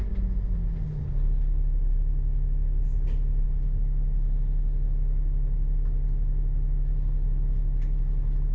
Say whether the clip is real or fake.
real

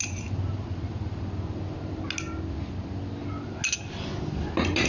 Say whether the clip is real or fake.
real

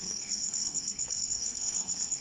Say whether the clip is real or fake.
fake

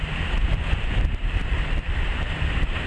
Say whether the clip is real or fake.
real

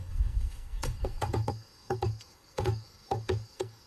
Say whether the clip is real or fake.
fake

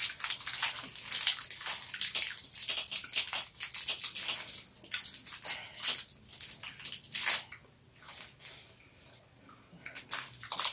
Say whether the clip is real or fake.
real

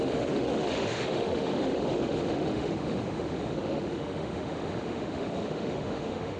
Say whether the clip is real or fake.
fake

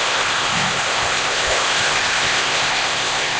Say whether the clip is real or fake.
fake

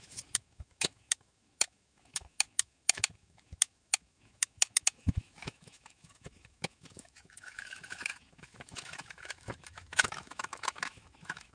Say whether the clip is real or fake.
fake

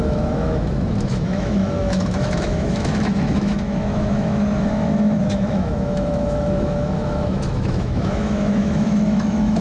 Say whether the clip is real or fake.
fake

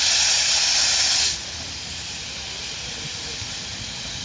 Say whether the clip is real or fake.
real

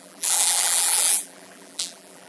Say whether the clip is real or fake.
fake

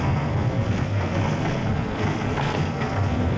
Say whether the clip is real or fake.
fake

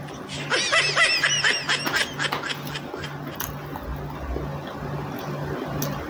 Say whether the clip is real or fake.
real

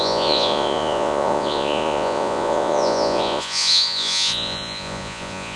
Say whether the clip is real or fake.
fake